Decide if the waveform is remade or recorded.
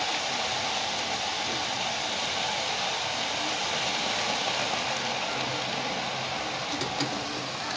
recorded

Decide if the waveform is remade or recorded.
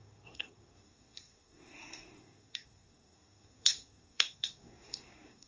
remade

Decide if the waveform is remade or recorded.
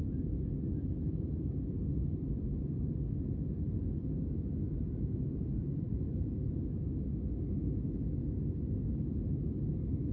recorded